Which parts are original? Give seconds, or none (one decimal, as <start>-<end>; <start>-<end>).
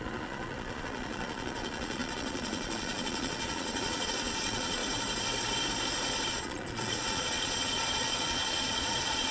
4.8-6.3